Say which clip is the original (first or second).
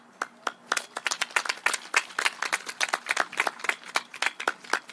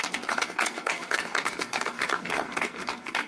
first